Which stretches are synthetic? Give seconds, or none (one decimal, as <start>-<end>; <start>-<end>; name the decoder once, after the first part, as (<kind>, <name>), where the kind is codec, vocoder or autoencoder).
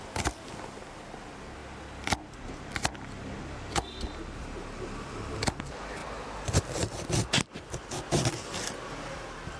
none